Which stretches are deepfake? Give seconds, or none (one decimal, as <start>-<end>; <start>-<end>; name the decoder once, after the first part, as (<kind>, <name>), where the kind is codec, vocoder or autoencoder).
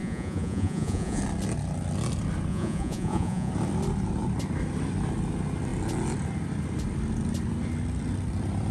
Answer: 0.0-1.2 (vocoder, Vocos); 2.5-3.5